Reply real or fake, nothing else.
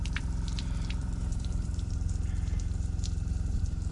fake